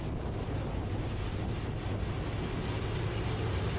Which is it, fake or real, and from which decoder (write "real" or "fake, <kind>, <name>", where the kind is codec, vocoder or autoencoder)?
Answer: real